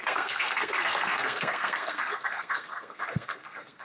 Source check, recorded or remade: remade